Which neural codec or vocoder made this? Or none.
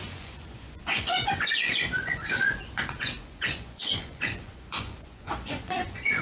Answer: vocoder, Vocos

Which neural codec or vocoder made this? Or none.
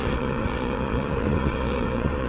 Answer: vocoder, Vocos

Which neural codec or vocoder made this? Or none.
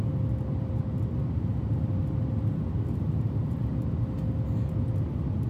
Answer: none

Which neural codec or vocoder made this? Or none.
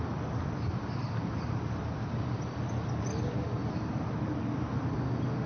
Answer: none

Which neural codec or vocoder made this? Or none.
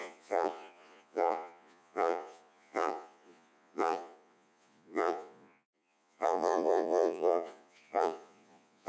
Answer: vocoder, Vocos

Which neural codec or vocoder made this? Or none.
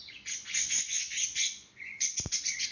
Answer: vocoder, Vocos